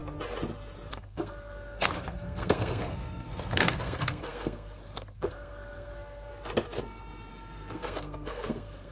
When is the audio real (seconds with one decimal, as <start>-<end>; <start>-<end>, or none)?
0.0-0.9; 6.3-7.3

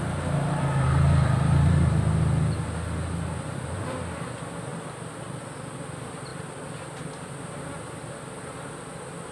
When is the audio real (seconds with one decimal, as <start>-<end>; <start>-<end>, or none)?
0.0-9.3

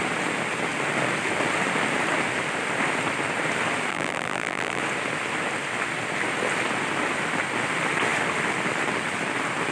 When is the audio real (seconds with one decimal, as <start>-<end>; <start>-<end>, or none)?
0.0-3.9; 4.8-9.7

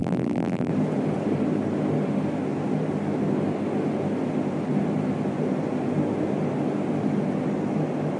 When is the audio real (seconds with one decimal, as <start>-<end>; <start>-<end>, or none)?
0.7-8.2

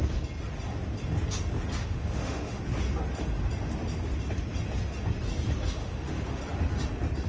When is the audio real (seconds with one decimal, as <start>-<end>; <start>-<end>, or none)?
0.0-1.8; 2.6-5.8; 6.4-7.3

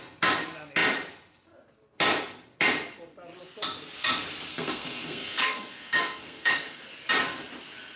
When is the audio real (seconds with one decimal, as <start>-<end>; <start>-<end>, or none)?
0.0-4.5; 6.8-8.0

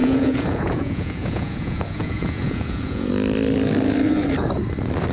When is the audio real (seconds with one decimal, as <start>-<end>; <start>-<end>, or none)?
3.1-5.1